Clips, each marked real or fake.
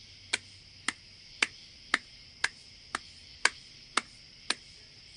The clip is real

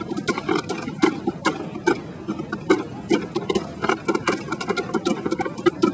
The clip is real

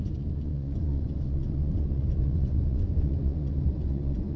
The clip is fake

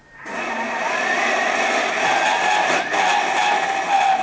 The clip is real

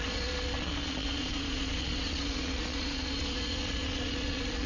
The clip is fake